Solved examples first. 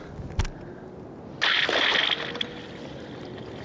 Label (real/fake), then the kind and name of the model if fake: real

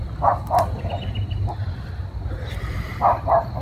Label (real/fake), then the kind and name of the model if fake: fake, vocoder, BigVGAN v2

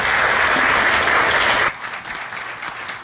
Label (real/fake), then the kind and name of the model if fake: real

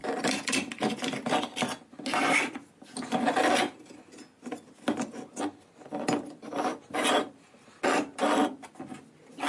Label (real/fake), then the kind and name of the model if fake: real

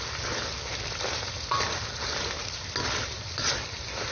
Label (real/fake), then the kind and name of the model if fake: real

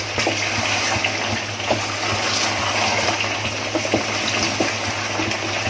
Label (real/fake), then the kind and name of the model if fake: real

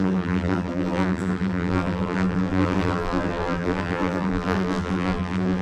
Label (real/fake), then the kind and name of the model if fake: fake, vocoder, BigVGAN v2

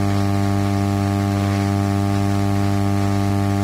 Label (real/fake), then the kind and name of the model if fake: real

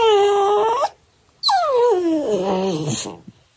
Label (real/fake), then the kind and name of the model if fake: real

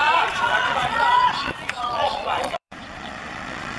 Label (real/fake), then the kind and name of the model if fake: fake, vocoder, Vocos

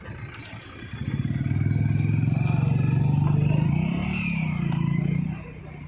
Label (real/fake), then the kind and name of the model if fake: real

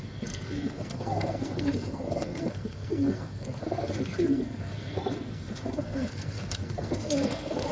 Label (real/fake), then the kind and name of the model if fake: fake, codec, SNAC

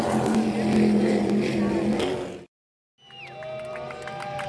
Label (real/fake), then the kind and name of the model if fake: real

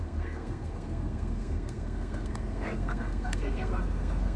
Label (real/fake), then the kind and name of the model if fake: fake, codec, SNAC